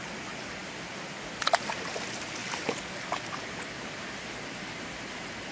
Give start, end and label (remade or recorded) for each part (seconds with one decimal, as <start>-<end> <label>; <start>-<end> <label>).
0.0-5.5 recorded